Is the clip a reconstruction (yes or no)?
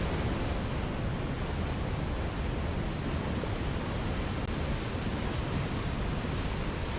no